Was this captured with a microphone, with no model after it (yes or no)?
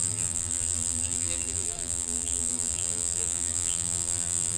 no